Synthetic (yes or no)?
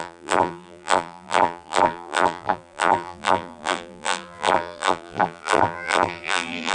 yes